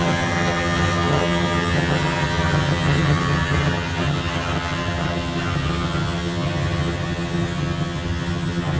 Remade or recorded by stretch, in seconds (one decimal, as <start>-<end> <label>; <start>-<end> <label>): 0.0-8.8 remade